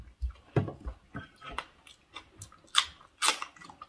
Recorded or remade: recorded